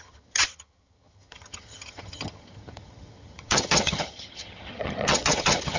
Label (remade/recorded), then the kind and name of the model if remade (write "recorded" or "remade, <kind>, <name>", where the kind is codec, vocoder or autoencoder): remade, vocoder, HiFi-GAN